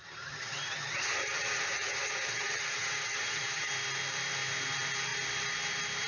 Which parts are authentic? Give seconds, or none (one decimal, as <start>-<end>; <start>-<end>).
3.7-6.1